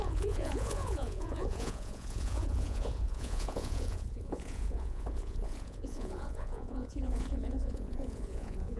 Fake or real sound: fake